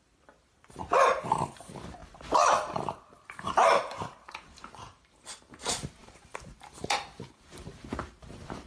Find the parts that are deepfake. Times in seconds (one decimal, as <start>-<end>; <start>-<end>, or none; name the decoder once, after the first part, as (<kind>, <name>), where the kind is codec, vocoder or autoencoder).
0.0-8.7 (vocoder, BigVGAN v2)